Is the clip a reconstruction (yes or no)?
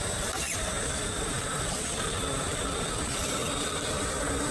yes